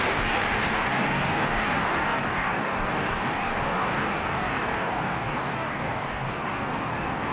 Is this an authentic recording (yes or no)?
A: no